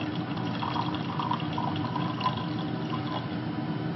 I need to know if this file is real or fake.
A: real